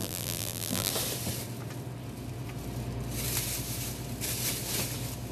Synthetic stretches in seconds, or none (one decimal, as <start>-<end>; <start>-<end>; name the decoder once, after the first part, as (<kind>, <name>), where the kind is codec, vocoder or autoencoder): 0.0-0.9 (vocoder, BigVGAN v2)